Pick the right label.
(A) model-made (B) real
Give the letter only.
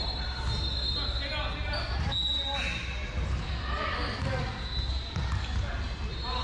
B